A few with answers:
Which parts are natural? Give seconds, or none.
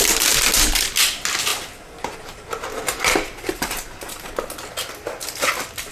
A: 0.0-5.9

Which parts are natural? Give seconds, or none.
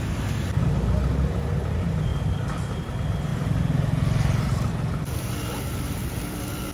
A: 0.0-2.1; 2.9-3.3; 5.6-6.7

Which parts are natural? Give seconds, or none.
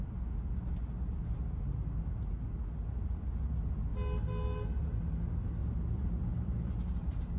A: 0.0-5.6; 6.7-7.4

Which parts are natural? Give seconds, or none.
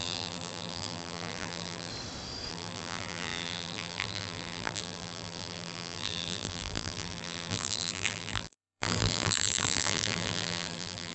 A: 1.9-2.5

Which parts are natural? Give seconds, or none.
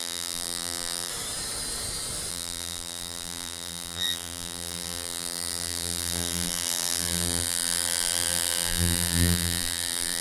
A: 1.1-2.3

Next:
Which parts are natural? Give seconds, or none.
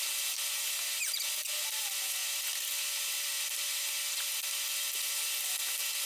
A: 0.0-6.1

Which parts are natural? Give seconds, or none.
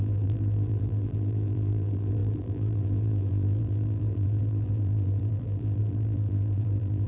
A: none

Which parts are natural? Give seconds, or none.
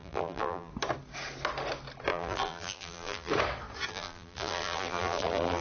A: 0.7-2.1; 3.3-3.9